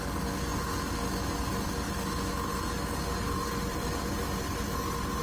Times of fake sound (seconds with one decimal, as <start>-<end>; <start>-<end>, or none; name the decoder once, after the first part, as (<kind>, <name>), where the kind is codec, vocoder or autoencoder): 3.7-4.7 (vocoder, BigVGAN v2)